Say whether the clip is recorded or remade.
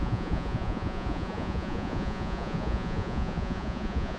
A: remade